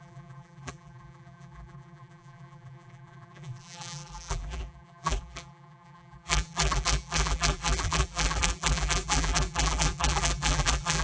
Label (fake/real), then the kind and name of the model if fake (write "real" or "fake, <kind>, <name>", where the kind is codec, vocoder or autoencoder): fake, vocoder, BigVGAN v2